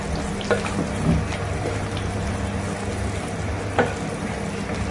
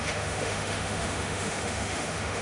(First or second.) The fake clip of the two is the second